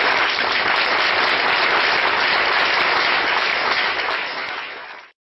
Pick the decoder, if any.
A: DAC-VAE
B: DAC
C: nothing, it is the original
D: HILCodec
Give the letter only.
C